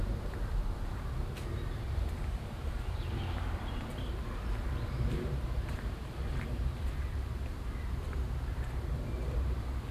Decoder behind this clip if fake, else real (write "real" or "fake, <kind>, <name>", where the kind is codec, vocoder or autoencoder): fake, vocoder, BigVGAN v2